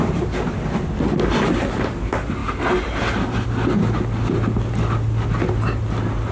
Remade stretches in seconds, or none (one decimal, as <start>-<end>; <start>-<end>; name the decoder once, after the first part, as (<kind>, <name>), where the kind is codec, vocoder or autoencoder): none